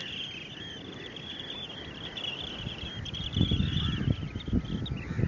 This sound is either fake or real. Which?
real